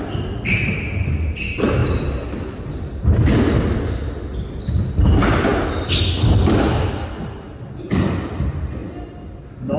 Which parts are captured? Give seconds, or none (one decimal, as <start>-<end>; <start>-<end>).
0.0-9.8